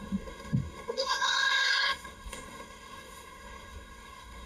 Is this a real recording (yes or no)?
no